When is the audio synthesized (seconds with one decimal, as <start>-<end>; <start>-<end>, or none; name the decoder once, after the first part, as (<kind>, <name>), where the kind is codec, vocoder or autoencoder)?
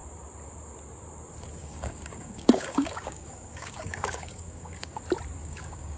1.6-5.0 (codec, DAC); 5.4-6.0